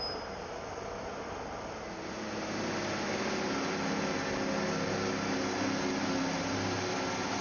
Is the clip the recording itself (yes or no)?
yes